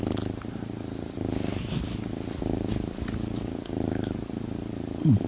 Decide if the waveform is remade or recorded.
recorded